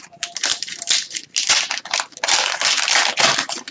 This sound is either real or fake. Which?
real